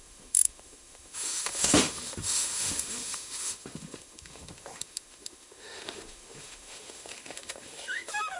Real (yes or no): no